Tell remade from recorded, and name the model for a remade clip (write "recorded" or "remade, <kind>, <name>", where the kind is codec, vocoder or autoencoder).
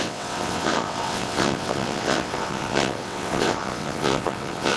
remade, vocoder, WaveNeXt